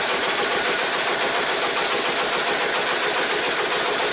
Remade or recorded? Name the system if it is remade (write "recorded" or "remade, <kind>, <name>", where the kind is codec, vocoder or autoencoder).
recorded